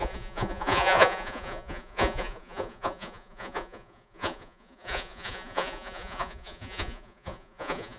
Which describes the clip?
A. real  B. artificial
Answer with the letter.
B